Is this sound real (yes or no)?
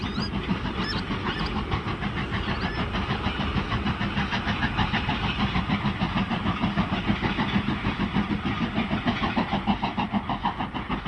yes